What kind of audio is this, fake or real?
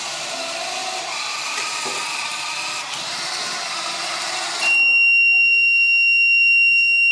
fake